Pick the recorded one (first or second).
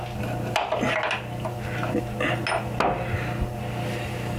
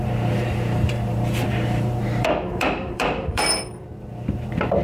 first